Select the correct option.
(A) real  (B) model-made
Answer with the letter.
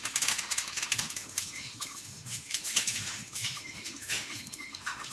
B